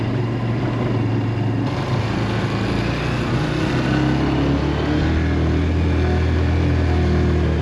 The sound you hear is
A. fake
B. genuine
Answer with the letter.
B